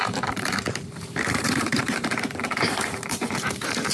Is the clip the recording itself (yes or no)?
no